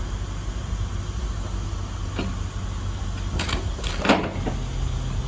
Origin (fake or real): real